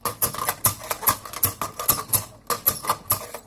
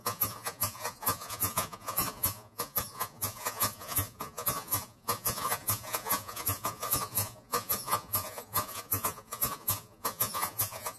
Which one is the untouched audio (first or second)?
first